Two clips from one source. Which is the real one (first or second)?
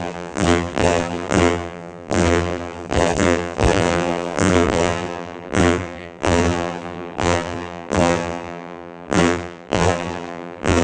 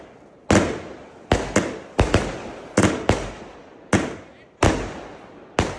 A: second